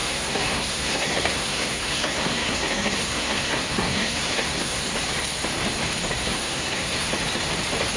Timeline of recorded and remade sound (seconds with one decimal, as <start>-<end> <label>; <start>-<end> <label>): 0.0-4.8 remade; 4.8-6.2 recorded; 6.2-7.1 remade; 7.1-8.0 recorded